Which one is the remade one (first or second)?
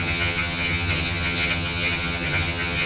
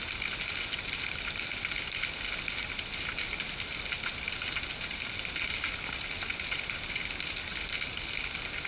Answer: first